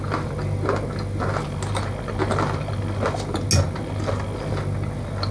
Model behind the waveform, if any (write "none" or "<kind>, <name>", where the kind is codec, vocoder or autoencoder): none